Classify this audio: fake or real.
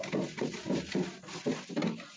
real